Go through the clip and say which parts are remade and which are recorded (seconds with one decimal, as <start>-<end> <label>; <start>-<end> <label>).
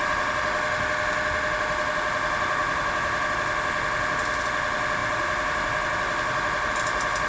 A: 0.0-2.6 recorded; 2.6-3.3 remade; 3.3-5.0 recorded; 5.0-6.7 remade; 6.7-7.3 recorded